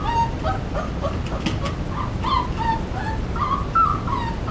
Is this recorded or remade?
recorded